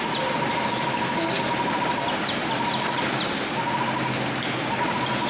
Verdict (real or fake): real